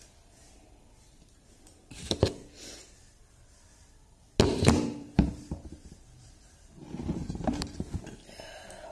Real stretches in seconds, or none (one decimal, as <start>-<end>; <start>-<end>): 0.0-4.5; 8.0-8.9